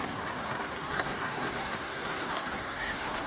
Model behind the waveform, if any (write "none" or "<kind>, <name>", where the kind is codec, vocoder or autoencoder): codec, SNAC